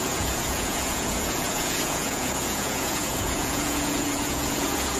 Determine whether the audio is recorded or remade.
remade